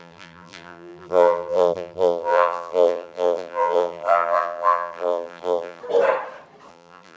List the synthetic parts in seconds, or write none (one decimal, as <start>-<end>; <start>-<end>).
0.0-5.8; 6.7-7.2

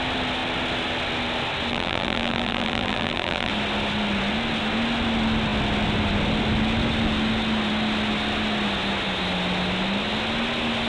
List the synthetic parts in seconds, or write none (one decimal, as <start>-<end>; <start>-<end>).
1.7-3.5

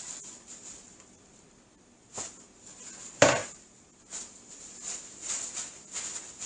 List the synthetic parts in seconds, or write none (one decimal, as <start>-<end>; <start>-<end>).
none

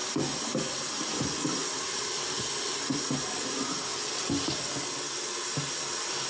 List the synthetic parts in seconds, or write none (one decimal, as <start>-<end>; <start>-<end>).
none

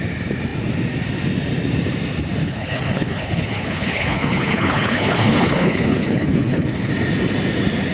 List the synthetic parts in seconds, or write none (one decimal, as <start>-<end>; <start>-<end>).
2.4-6.9

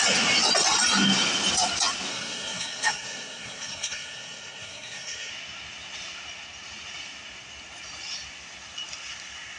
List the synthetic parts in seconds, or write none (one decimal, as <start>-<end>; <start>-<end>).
2.1-5.3

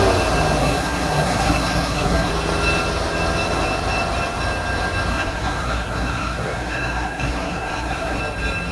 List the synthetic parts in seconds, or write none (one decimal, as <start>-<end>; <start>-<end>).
0.6-2.3; 5.1-8.2